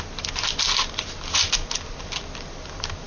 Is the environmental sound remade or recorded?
recorded